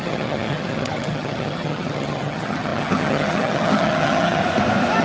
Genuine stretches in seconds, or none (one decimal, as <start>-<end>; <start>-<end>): 4.4-5.0